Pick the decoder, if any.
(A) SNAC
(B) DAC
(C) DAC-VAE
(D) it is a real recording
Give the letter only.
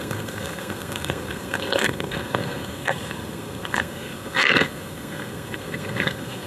A